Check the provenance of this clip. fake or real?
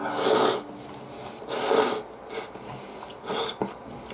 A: real